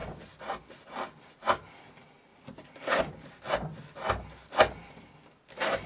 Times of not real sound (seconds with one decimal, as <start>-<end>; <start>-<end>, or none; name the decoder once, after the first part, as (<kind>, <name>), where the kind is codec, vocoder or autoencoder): none

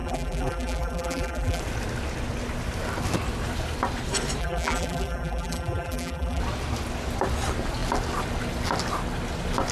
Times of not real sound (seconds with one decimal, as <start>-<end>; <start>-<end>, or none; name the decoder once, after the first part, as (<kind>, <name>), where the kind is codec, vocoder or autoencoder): 0.0-1.6 (vocoder, BigVGAN v2); 4.4-6.4

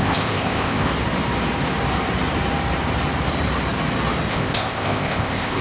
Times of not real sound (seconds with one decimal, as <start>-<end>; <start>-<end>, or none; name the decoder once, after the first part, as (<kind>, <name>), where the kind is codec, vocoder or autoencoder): 0.0-0.9 (codec, ZipCodec); 4.3-5.6

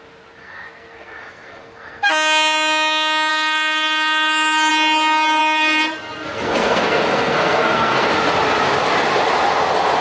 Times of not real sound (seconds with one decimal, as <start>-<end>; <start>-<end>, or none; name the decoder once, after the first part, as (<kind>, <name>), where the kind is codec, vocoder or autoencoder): 0.4-2.1 (codec, SNAC); 3.3-4.7; 5.4-8.1

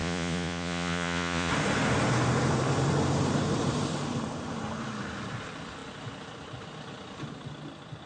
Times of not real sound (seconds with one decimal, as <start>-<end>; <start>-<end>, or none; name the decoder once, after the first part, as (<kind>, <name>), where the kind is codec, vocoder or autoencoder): 0.0-1.5 (vocoder, Vocos)